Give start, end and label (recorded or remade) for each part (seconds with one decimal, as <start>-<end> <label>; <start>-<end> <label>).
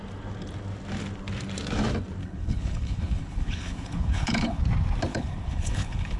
0.0-2.2 recorded; 2.2-4.6 remade; 4.6-5.1 recorded; 5.1-6.2 remade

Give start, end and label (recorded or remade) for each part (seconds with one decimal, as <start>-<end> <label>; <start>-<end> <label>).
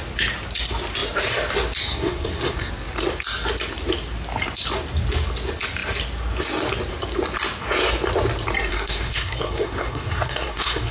0.0-1.9 recorded; 1.9-2.7 remade; 2.7-8.7 recorded; 8.7-10.9 remade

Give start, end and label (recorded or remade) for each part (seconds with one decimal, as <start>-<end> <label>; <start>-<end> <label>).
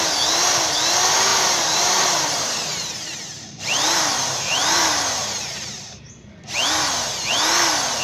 0.0-1.3 recorded; 1.3-6.1 remade; 6.1-8.0 recorded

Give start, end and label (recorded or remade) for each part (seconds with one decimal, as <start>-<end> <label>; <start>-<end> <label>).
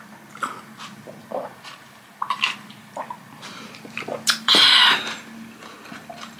0.0-1.2 recorded; 1.2-4.8 remade; 4.8-6.4 recorded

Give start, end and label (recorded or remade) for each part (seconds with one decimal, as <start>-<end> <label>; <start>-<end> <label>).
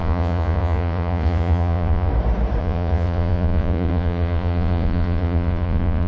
0.0-2.1 remade; 2.1-2.6 recorded; 2.6-6.1 remade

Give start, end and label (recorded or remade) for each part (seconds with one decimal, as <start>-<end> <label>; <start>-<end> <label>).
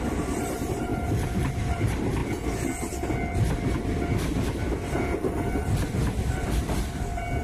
0.0-2.2 remade; 2.2-6.6 recorded; 6.6-7.4 remade